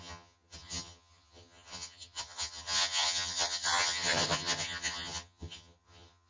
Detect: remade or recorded remade